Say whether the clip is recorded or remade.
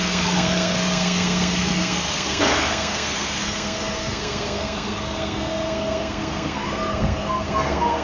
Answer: remade